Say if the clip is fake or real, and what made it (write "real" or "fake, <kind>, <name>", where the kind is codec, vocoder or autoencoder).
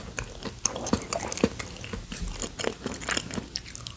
real